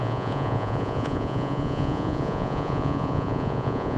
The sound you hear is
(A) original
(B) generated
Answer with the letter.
B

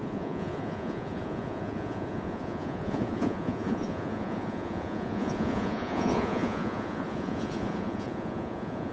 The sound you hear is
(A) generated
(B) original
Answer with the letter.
A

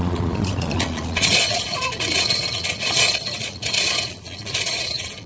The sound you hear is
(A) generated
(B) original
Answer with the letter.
A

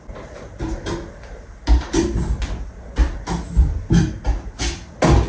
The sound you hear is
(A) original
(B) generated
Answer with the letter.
A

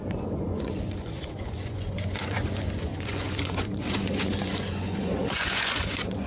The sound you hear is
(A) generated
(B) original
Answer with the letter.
A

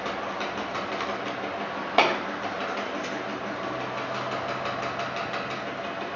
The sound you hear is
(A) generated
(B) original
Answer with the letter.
B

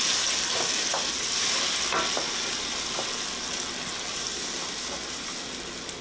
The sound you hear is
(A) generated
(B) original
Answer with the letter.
B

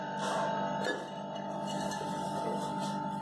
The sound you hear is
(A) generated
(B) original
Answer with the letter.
B